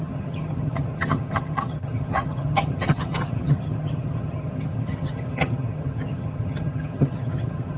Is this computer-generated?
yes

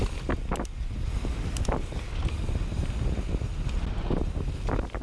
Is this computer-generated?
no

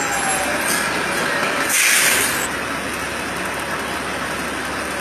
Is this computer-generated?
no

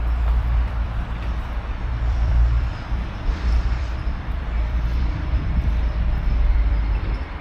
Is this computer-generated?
yes